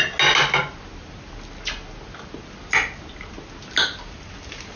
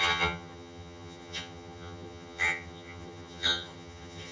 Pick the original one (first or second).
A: first